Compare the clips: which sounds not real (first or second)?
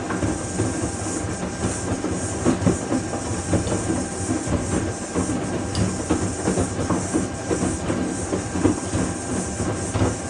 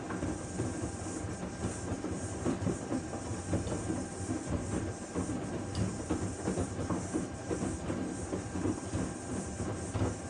second